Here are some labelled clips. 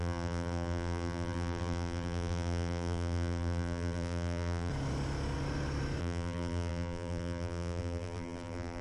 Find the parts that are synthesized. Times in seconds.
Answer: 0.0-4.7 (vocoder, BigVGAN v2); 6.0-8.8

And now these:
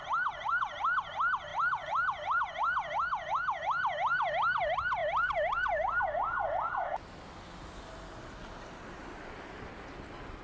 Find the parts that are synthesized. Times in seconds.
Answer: none

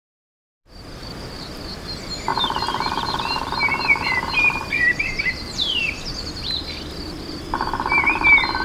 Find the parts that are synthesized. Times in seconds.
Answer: 1.0-1.7 (vocoder, BigVGAN v2); 2.3-6.4

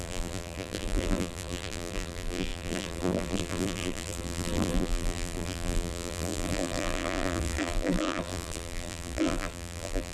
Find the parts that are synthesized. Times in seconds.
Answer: 0.0-10.1 (vocoder, BigVGAN v2)

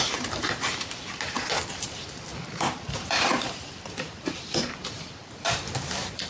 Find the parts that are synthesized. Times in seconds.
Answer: 0.0-6.3 (vocoder, BigVGAN v2)

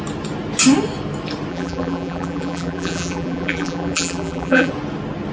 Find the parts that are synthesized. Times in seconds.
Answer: 1.5-4.7 (vocoder, BigVGAN v2)